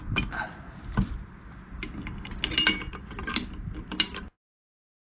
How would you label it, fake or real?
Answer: real